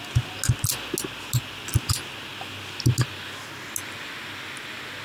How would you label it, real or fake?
real